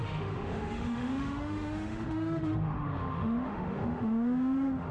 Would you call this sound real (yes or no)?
no